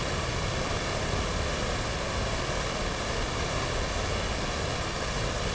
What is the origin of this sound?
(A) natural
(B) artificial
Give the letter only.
A